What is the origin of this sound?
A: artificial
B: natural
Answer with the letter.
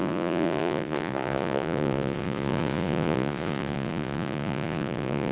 A